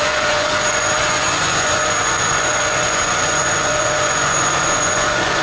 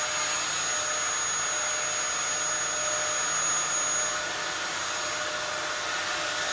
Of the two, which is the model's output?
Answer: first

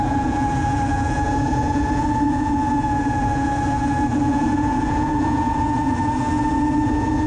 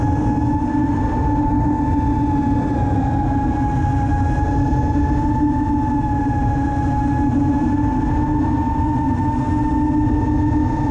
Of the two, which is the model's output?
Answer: first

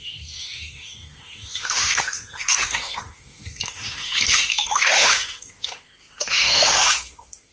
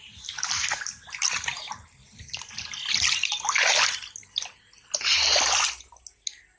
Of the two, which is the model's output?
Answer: first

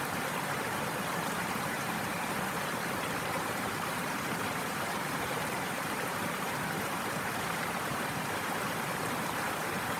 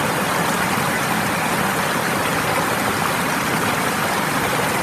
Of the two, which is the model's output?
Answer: first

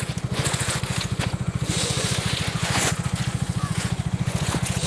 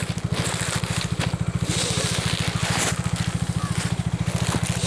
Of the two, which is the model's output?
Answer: first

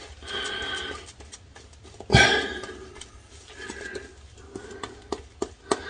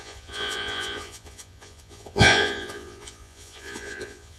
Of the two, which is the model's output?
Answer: second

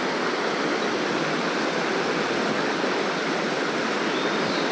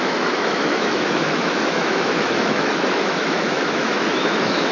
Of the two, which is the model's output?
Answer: second